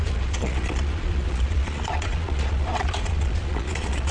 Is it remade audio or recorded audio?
remade